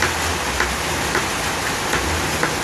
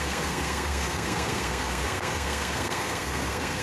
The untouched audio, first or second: first